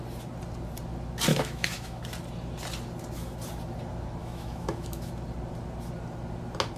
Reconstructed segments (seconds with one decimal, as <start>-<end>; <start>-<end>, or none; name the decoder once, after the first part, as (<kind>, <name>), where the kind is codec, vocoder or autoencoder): 1.3-2.0 (autoencoder, DAC-VAE); 4.2-5.1